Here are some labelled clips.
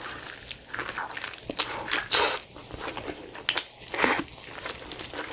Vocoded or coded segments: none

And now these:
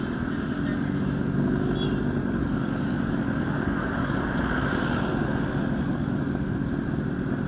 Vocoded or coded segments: 2.2-4.2; 5.9-6.6

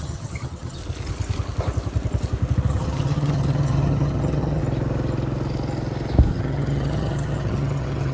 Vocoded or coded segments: 0.0-0.8; 2.7-4.6; 6.3-8.1